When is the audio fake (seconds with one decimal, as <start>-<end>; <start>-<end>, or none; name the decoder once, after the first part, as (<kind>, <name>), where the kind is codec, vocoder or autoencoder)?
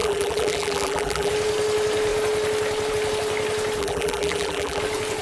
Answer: 0.0-1.3 (vocoder, BigVGAN v2); 3.8-4.8